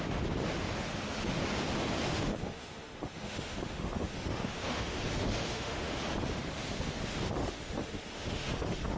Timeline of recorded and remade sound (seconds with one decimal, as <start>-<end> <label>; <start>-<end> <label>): 0.0-2.1 recorded; 2.1-6.0 remade; 6.0-7.4 recorded; 7.4-9.0 remade

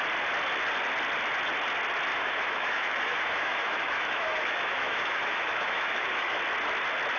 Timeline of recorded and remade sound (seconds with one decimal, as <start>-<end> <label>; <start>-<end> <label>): 0.0-2.1 recorded; 2.1-6.4 remade; 6.4-7.2 recorded

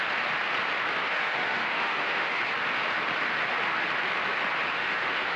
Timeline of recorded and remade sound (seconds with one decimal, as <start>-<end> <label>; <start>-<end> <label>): 0.0-1.0 recorded; 1.0-2.4 remade; 2.4-4.7 recorded; 4.7-5.4 remade

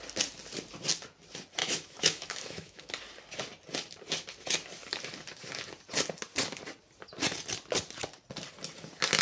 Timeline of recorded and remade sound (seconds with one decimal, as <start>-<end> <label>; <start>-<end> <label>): 0.0-1.6 recorded; 1.6-2.9 remade; 2.9-9.2 recorded

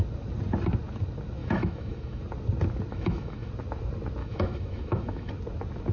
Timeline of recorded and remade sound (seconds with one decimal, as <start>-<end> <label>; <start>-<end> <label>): 0.0-1.4 recorded; 1.4-2.2 remade; 2.2-2.9 recorded; 2.9-3.5 remade; 3.5-4.2 recorded; 4.2-5.3 remade; 5.3-5.9 recorded

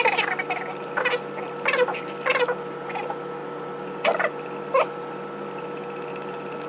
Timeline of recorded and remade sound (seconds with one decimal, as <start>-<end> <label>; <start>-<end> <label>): 0.0-6.7 recorded

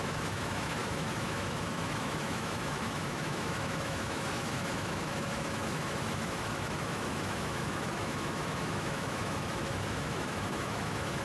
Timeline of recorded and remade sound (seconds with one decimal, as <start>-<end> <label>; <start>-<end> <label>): 0.0-11.2 remade

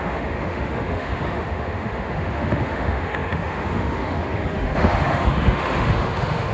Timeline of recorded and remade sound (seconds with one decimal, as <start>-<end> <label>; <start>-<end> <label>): 0.0-6.5 remade